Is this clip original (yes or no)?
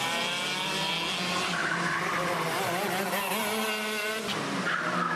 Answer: yes